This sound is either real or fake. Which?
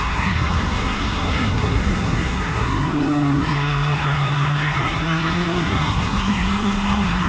fake